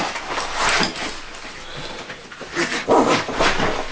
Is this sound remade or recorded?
recorded